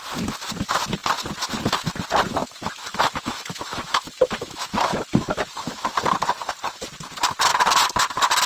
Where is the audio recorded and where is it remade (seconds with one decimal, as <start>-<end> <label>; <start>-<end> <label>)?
0.0-2.4 recorded; 2.4-5.9 remade; 5.9-8.5 recorded